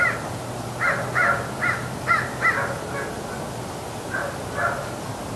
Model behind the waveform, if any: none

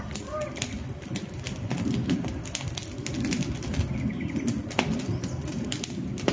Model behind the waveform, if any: none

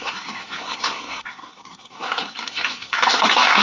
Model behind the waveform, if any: codec, SNAC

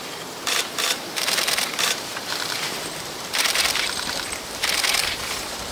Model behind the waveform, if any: vocoder, BigVGAN v2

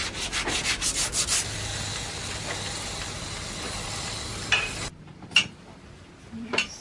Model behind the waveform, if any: none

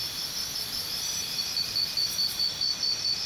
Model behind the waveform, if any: none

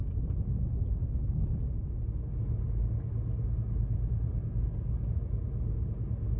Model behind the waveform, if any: none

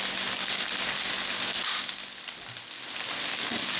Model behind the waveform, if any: none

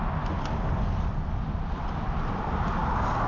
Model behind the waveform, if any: vocoder, BigVGAN v2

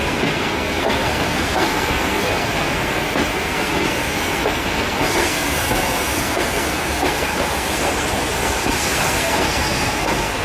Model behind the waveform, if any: codec, SNAC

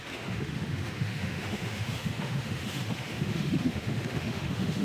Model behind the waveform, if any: autoencoder, DAC-VAE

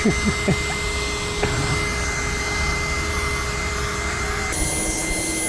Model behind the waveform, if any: none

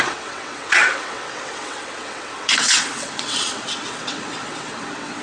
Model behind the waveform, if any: vocoder, WaveNeXt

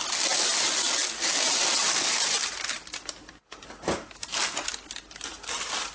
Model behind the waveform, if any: none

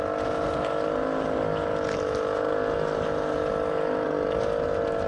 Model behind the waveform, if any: none